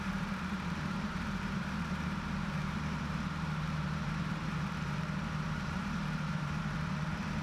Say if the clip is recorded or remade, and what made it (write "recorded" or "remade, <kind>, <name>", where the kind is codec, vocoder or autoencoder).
remade, vocoder, BigVGAN v2